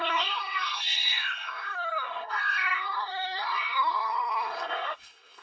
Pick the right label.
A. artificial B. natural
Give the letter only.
A